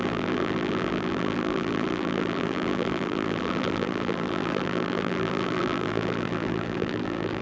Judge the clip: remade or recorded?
remade